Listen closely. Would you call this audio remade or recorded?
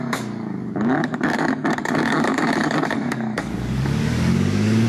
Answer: remade